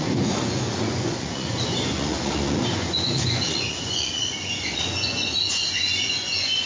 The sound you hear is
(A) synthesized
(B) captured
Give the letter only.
A